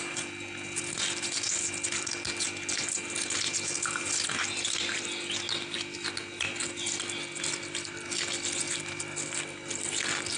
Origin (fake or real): real